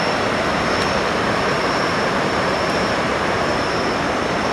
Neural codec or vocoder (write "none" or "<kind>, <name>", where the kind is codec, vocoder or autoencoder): vocoder, BigVGAN v2